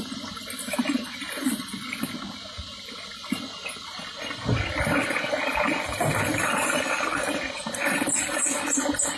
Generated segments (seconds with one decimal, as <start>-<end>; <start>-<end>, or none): none